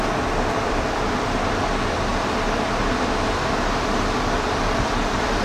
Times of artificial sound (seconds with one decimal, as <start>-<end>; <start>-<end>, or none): 0.0-2.1; 4.4-5.4